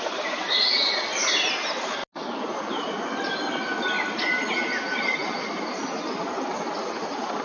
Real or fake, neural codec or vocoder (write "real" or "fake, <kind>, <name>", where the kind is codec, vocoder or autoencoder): real